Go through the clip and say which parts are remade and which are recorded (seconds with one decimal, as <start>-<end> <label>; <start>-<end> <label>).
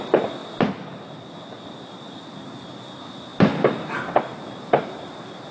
0.0-0.4 recorded; 0.4-2.2 remade; 2.2-5.5 recorded